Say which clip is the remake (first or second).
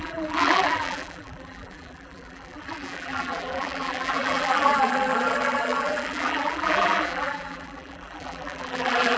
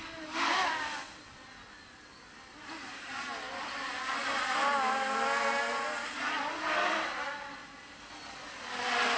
first